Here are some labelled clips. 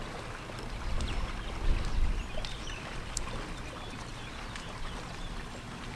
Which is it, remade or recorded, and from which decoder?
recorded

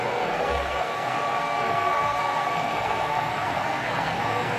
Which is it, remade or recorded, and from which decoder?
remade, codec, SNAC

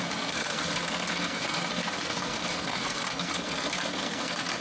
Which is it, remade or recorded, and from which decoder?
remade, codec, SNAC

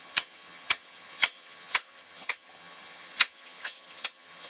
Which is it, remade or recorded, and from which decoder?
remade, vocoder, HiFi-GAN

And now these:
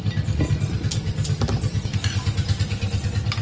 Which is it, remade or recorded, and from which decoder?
recorded